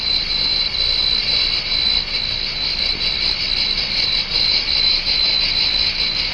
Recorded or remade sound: recorded